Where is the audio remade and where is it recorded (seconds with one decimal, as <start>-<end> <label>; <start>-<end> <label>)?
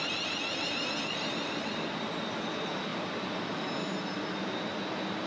0.0-5.3 recorded